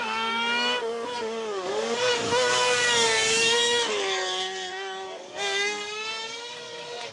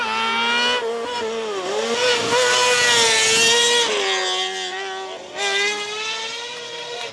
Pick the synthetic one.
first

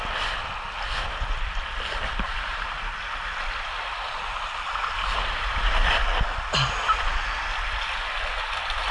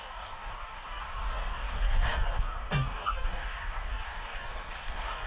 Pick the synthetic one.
second